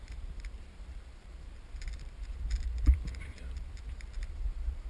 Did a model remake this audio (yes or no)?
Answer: yes